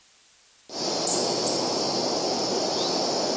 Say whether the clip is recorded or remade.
recorded